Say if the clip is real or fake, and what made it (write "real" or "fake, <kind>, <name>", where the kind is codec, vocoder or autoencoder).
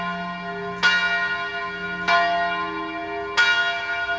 real